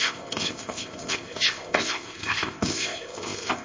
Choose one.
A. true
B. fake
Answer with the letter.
B